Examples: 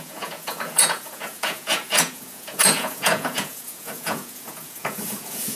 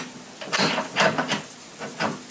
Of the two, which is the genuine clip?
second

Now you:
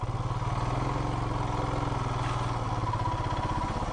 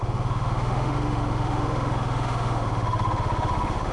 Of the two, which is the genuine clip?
first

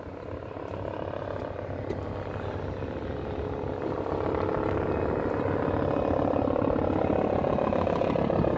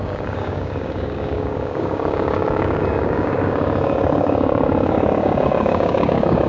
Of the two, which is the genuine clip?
first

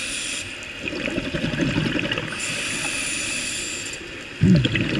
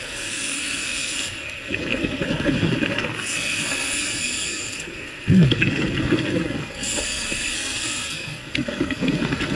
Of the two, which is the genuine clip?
first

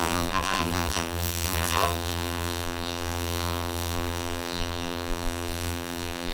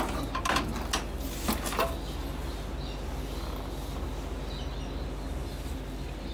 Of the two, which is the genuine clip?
second